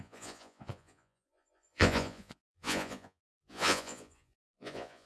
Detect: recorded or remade remade